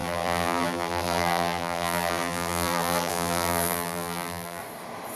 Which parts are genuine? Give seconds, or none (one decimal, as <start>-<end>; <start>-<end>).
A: 4.6-5.2